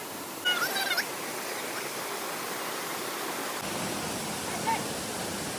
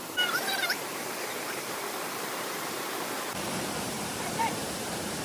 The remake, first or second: second